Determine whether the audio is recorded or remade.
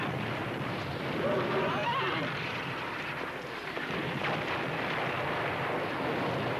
remade